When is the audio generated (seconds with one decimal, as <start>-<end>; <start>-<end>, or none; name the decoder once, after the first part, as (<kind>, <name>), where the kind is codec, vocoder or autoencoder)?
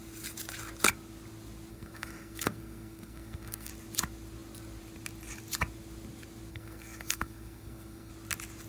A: 1.7-3.7 (codec, SNAC); 6.5-8.1